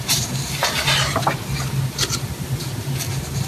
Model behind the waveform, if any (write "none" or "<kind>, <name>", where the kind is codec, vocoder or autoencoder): none